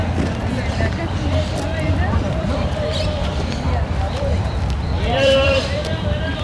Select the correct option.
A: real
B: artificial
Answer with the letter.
B